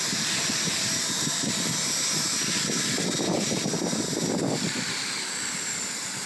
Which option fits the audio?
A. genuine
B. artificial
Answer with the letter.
A